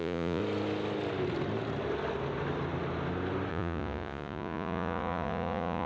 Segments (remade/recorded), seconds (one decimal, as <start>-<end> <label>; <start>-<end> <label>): 0.0-0.4 remade; 0.4-3.5 recorded; 3.5-5.9 remade

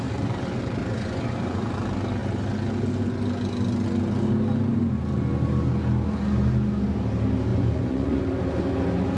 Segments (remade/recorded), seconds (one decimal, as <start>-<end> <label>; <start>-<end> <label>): 0.0-0.8 recorded; 0.8-1.7 remade; 1.7-7.5 recorded; 7.5-8.2 remade; 8.2-9.2 recorded

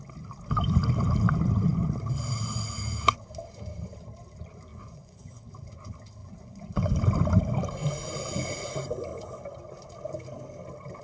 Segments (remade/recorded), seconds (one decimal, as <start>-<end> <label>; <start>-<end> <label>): 0.0-4.7 recorded; 4.7-5.4 remade; 5.4-6.2 recorded; 6.2-7.0 remade; 7.0-11.0 recorded

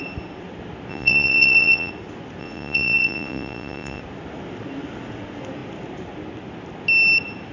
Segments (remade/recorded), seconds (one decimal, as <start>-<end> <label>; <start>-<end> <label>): 0.0-0.9 recorded; 0.9-1.9 remade; 1.9-2.4 recorded; 2.4-4.0 remade; 4.0-7.5 recorded

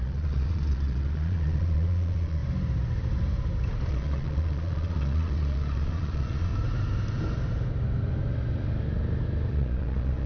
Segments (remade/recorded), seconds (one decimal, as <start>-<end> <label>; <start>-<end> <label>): 0.0-2.4 remade; 2.4-3.9 recorded; 3.9-6.5 remade; 6.5-9.5 recorded; 9.5-10.3 remade

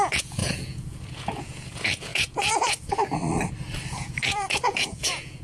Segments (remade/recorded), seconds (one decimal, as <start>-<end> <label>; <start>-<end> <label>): 0.0-3.2 remade; 3.2-3.9 recorded; 3.9-5.4 remade

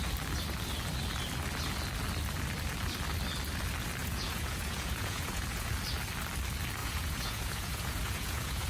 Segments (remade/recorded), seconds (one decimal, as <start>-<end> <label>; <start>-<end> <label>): 0.0-4.0 recorded; 4.0-5.7 remade; 5.7-6.8 recorded; 6.8-8.7 remade

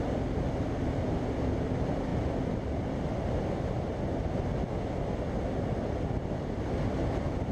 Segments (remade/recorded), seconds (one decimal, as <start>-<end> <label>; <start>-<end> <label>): 0.0-7.5 recorded